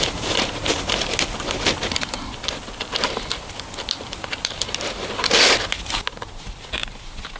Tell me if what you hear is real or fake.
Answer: real